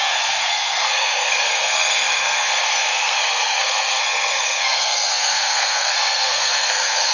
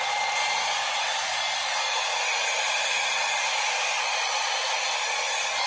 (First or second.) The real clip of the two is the second